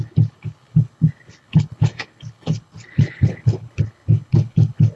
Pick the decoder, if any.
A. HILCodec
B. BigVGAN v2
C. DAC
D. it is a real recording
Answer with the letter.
A